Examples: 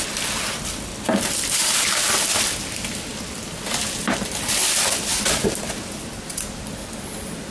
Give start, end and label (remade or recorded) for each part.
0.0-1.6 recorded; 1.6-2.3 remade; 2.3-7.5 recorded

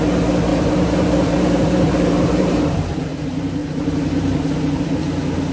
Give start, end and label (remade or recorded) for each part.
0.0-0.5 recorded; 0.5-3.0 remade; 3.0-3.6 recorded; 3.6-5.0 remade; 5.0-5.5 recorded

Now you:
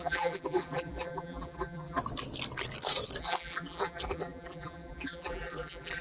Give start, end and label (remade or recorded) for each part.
0.0-2.0 remade; 2.0-3.2 recorded; 3.2-6.0 remade

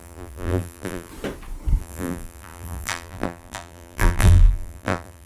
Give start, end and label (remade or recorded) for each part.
0.0-1.1 remade; 1.1-1.8 recorded; 1.8-5.3 remade

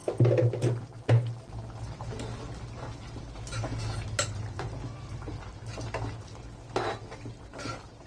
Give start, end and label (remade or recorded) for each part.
0.0-8.1 recorded